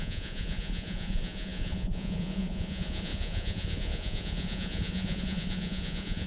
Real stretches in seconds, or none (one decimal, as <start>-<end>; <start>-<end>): none